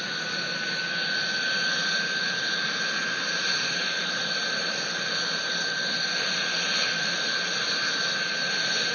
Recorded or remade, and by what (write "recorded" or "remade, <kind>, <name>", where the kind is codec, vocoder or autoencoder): recorded